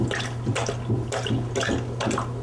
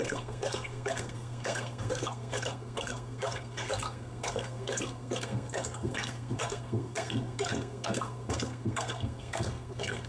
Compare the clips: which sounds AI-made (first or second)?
second